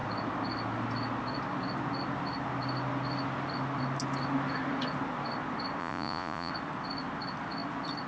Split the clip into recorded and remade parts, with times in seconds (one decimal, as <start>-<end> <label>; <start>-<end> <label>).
0.0-5.8 recorded; 5.8-6.5 remade; 6.5-8.1 recorded

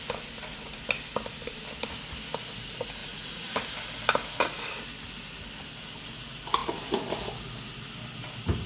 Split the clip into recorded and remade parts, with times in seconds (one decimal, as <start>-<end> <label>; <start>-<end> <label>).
0.0-3.0 recorded; 3.0-3.6 remade; 3.6-8.7 recorded